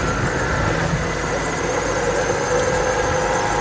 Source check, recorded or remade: recorded